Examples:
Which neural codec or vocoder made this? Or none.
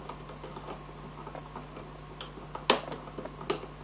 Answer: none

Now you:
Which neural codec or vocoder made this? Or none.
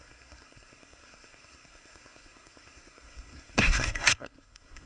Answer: codec, SNAC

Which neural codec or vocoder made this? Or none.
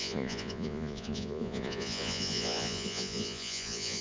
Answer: vocoder, Vocos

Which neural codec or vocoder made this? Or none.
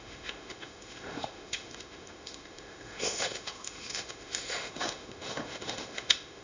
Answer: autoencoder, DAC-VAE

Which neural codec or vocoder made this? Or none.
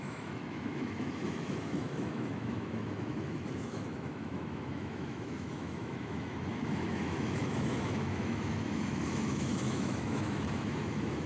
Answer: autoencoder, DAC-VAE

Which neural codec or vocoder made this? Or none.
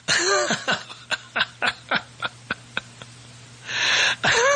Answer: none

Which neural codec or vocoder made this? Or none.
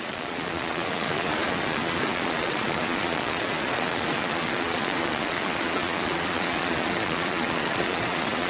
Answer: vocoder, Vocos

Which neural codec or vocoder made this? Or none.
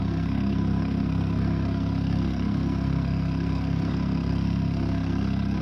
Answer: codec, SNAC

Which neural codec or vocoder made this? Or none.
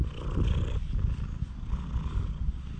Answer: none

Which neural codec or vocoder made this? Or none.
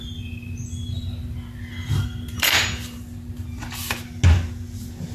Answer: none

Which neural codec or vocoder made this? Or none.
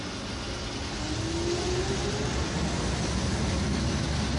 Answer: none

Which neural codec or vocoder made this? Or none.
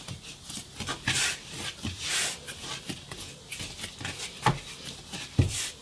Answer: none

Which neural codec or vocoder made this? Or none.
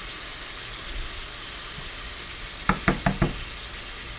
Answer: none